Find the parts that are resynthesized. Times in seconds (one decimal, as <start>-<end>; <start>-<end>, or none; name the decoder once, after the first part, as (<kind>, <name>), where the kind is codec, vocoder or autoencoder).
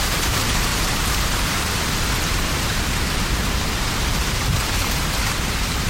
0.0-5.9 (vocoder, BigVGAN v2)